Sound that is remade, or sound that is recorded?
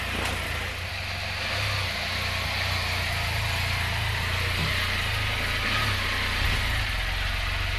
recorded